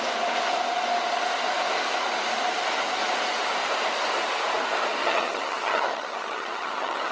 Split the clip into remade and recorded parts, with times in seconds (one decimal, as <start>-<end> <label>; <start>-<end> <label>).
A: 0.0-5.0 recorded; 5.0-7.1 remade